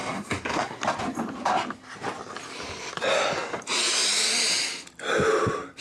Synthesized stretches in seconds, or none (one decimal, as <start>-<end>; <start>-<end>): 0.0-0.8